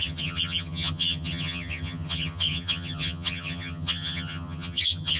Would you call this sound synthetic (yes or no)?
yes